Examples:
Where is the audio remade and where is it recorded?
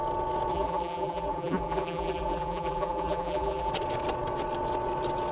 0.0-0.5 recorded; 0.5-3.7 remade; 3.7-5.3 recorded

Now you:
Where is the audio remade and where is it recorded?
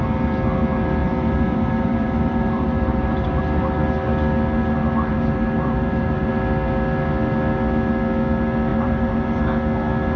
0.0-1.0 recorded; 1.0-3.4 remade; 3.4-5.1 recorded; 5.1-6.3 remade; 6.3-8.7 recorded; 8.7-9.4 remade; 9.4-10.2 recorded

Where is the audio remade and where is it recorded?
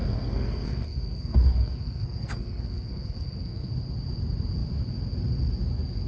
0.0-3.7 remade; 3.7-6.1 recorded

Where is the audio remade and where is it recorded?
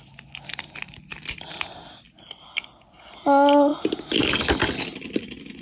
0.0-5.6 recorded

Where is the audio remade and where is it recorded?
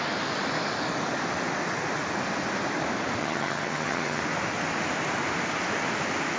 0.0-3.2 recorded; 3.2-4.2 remade; 4.2-6.4 recorded